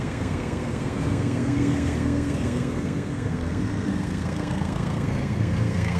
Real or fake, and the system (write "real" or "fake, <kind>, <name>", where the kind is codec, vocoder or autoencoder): fake, codec, SNAC